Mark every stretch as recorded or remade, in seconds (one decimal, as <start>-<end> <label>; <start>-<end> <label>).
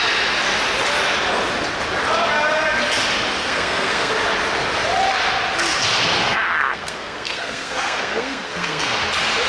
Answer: 0.0-3.4 recorded; 3.4-4.1 remade; 4.1-6.2 recorded; 6.2-9.0 remade; 9.0-9.5 recorded